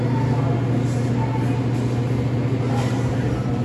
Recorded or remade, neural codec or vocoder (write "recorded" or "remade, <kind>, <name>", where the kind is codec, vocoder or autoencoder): recorded